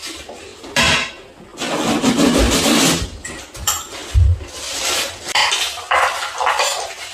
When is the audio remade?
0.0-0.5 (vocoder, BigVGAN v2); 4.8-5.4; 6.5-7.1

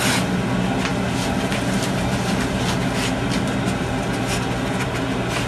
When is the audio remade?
none

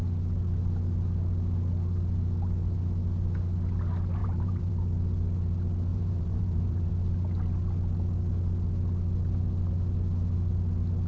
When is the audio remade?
4.2-4.7 (vocoder, BigVGAN v2); 5.9-6.9